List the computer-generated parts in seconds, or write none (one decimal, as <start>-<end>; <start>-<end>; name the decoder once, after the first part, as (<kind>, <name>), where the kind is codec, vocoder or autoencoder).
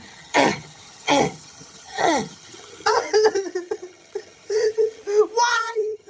0.0-5.0 (vocoder, HiFi-GAN); 5.5-6.1